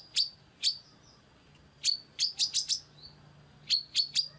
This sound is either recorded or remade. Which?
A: recorded